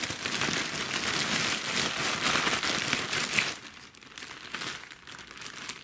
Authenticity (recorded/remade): recorded